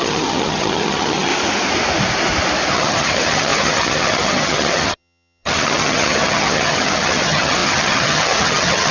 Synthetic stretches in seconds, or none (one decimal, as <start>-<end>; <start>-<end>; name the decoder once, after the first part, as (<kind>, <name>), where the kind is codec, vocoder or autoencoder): 0.0-1.3 (vocoder, HiFi-GAN); 2.7-8.9